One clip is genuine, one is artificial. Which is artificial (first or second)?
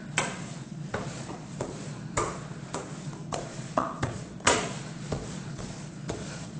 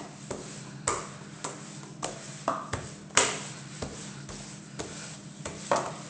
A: first